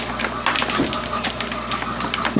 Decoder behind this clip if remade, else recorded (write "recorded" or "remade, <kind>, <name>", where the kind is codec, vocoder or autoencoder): recorded